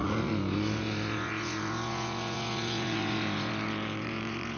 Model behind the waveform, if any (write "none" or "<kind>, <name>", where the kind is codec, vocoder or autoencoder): vocoder, Vocos